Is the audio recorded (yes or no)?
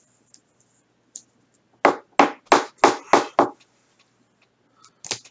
yes